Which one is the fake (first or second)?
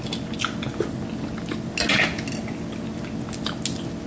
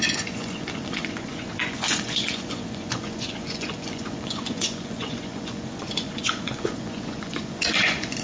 second